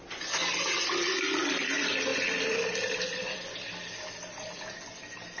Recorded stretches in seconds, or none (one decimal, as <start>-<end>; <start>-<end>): 0.0-5.4